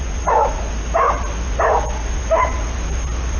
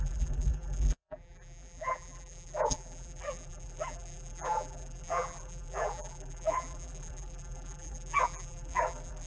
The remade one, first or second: second